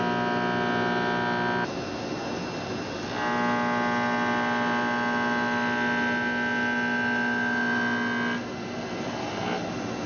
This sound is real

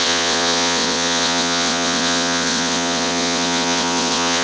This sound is fake